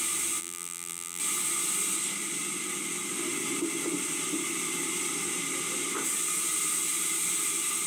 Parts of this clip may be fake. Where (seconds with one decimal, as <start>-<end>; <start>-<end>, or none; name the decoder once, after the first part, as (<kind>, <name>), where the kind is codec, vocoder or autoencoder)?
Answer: 0.4-1.2 (vocoder, BigVGAN v2)